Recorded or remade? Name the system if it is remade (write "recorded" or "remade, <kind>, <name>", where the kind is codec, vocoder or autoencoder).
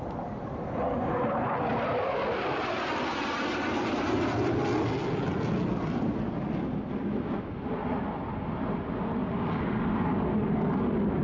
recorded